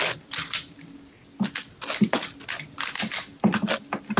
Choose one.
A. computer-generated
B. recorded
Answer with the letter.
B